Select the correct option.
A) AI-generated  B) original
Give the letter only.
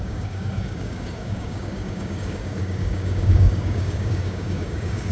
A